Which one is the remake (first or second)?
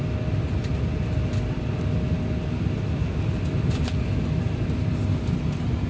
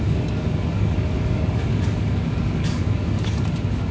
second